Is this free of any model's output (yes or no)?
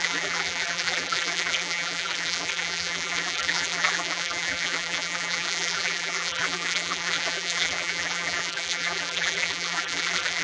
no